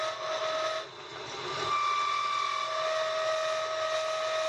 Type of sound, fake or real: real